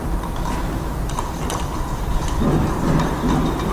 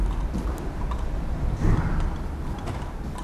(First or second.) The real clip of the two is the first